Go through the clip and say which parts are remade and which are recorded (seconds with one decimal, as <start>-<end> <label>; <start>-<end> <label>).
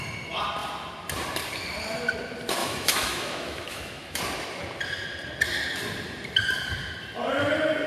0.0-2.6 recorded; 2.6-4.2 remade; 4.2-7.9 recorded